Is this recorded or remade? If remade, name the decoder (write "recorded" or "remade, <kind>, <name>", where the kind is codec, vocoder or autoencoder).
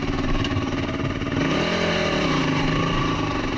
remade, vocoder, BigVGAN v2